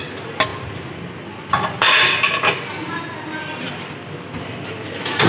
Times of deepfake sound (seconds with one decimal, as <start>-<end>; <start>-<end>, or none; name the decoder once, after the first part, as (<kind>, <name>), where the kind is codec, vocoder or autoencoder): none